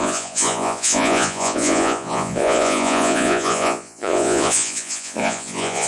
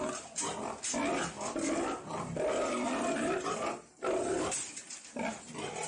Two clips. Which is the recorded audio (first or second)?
second